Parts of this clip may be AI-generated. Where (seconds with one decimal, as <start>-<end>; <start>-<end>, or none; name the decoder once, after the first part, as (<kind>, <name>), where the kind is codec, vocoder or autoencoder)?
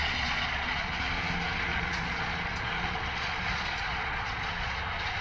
0.0-1.0 (vocoder, Vocos); 1.7-4.8